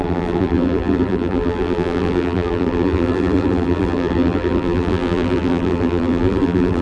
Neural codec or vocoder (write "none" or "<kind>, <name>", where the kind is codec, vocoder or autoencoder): vocoder, BigVGAN v2